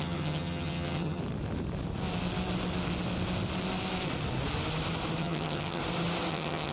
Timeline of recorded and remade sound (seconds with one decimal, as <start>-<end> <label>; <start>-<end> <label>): 0.0-1.2 remade; 1.2-5.2 recorded; 5.2-5.8 remade; 5.8-6.3 recorded; 6.3-6.7 remade